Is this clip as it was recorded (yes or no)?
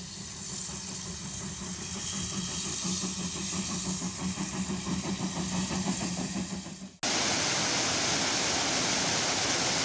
yes